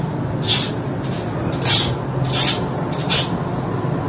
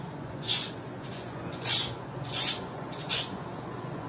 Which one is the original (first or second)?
first